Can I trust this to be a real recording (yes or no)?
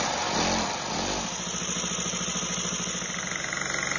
yes